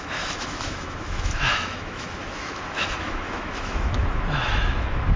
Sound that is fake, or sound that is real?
fake